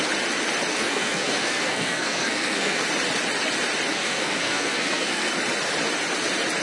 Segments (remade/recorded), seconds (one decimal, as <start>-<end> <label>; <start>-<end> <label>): 0.0-0.7 recorded; 0.7-2.8 remade; 2.8-3.9 recorded; 3.9-5.3 remade; 5.3-6.6 recorded